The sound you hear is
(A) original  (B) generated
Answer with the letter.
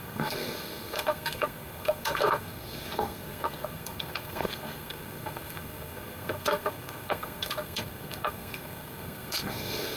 B